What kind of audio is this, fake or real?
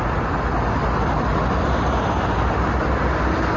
real